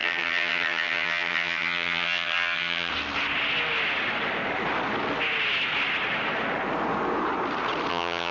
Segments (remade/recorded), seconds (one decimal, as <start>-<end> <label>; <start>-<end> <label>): 0.0-2.9 remade; 2.9-7.9 recorded; 7.9-8.3 remade